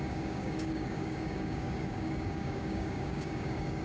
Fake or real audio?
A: fake